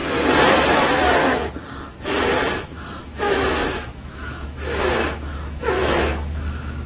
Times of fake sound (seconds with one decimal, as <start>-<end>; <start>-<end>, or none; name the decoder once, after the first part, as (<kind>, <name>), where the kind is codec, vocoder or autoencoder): 0.7-1.2 (autoencoder, DAC-VAE); 2.5-6.9